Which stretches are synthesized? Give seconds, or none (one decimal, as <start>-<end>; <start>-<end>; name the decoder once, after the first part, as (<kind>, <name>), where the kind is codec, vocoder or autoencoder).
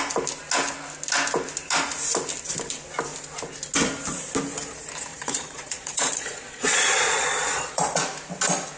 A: 5.1-8.0 (vocoder, Vocos)